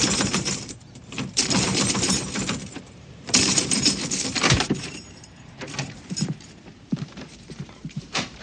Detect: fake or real fake